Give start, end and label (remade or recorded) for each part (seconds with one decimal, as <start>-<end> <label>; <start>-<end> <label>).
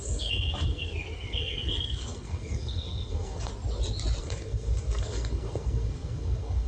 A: 0.0-3.5 remade; 3.5-4.2 recorded; 4.2-6.7 remade